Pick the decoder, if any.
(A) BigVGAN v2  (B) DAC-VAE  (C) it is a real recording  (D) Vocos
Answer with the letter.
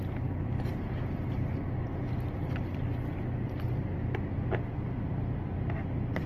C